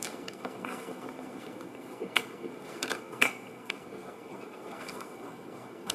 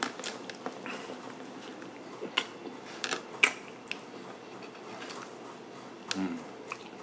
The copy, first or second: first